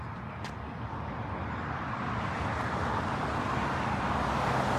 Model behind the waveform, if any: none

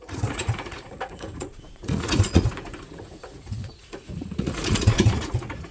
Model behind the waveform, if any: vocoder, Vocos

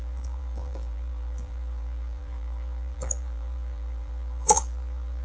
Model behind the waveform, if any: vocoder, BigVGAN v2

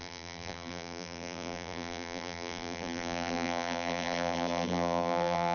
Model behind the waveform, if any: vocoder, BigVGAN v2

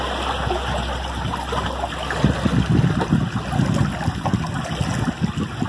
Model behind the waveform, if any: none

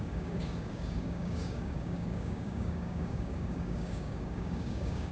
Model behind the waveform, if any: codec, DAC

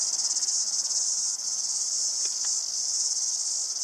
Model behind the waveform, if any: none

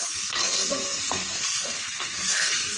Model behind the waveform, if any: codec, SNAC